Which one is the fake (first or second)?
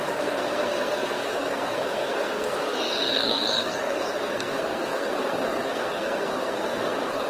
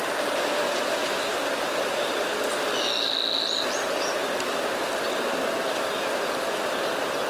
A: first